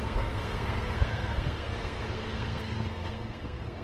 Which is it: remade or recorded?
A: remade